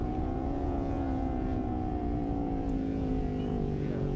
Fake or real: fake